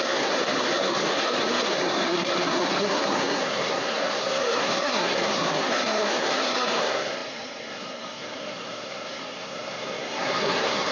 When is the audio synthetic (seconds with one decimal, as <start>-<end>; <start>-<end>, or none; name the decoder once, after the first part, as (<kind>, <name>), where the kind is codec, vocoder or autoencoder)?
0.0-10.9 (codec, SNAC)

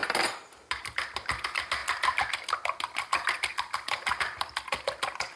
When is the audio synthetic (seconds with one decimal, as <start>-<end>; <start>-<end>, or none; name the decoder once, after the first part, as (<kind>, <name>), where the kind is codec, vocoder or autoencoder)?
none

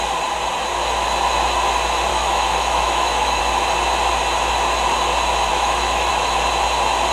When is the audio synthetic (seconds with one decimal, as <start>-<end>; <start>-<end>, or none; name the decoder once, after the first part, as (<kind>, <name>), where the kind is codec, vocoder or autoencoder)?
2.1-3.4 (autoencoder, DAC-VAE); 5.5-6.1

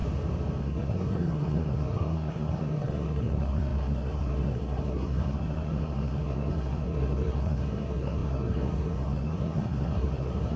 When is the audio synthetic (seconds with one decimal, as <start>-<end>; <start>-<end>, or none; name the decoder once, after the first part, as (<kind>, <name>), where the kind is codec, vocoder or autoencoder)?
0.6-10.6 (codec, SNAC)

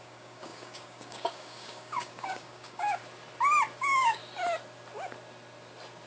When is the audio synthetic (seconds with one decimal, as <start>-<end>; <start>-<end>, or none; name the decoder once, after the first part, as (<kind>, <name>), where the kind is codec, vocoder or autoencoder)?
0.0-3.0 (codec, DAC); 3.8-4.2

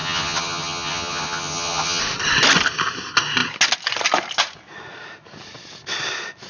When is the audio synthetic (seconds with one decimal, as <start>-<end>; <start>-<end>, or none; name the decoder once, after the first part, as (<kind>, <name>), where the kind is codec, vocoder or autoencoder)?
0.0-2.0 (vocoder, HiFi-GAN)

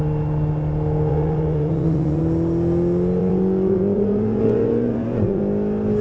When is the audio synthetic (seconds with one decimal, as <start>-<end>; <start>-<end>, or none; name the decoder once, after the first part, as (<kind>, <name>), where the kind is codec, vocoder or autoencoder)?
1.1-2.2 (vocoder, Vocos); 3.2-5.4

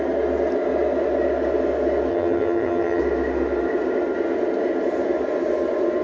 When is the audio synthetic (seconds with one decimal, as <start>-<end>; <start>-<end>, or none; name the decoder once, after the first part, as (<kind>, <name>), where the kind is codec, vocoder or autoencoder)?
2.1-3.0 (vocoder, HiFi-GAN)